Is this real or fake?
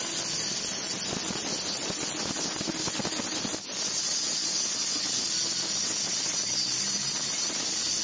real